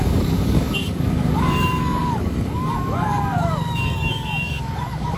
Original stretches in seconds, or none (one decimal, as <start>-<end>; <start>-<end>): none